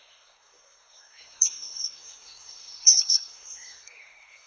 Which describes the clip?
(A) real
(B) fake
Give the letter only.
B